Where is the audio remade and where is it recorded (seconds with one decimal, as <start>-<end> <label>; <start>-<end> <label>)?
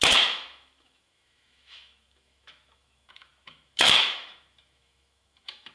0.0-5.7 remade